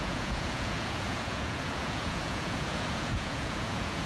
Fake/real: fake